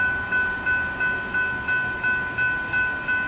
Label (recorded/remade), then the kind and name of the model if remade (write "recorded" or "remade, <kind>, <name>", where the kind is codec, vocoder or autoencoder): recorded